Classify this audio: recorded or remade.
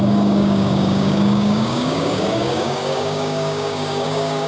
remade